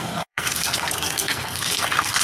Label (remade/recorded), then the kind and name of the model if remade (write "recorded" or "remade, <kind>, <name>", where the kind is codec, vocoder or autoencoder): remade, codec, SNAC